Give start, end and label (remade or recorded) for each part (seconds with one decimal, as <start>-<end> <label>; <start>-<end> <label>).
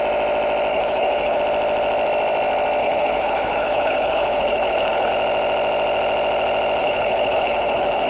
0.0-0.7 recorded; 0.7-1.4 remade; 1.4-2.8 recorded; 2.8-5.1 remade; 5.1-6.8 recorded; 6.8-8.1 remade